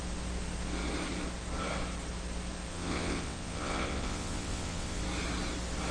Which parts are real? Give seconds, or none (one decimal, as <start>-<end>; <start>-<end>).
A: 0.0-2.7; 5.0-5.9